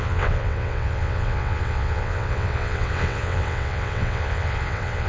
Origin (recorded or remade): remade